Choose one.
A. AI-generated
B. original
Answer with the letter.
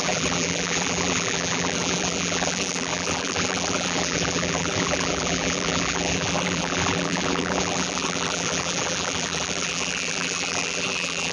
A